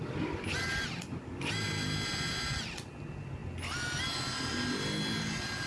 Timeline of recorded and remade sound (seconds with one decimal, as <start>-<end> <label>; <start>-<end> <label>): 0.0-5.7 recorded